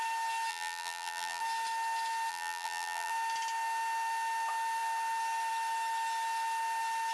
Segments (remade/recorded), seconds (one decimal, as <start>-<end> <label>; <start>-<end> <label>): 0.0-0.5 recorded; 0.5-1.4 remade; 1.4-2.3 recorded; 2.3-3.1 remade; 3.1-7.1 recorded